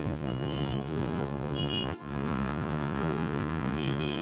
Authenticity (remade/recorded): remade